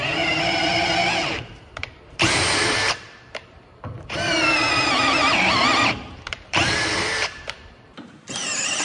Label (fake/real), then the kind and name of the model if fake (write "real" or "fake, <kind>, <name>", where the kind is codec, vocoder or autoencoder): fake, vocoder, BigVGAN v2